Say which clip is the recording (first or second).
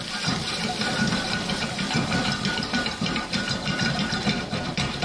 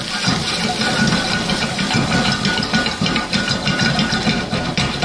second